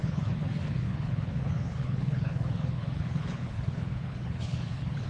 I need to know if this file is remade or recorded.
remade